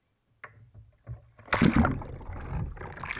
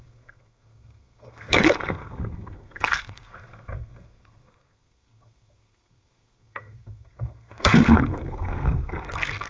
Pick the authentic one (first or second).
first